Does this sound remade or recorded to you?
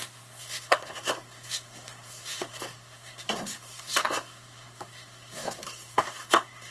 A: remade